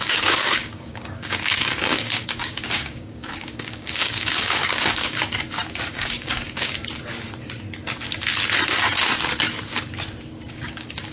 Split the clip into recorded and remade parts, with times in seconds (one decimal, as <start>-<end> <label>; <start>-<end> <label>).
0.0-5.2 remade; 5.2-5.9 recorded; 5.9-6.8 remade; 6.8-10.5 recorded; 10.5-11.1 remade